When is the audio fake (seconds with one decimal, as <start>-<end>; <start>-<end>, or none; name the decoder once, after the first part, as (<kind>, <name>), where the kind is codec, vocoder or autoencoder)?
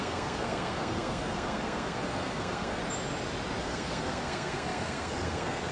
0.0-2.8 (codec, SNAC); 3.6-5.7